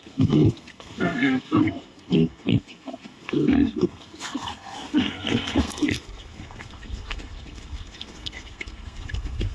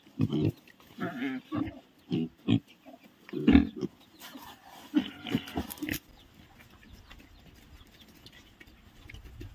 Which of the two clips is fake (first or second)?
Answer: first